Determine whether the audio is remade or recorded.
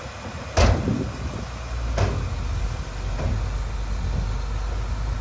recorded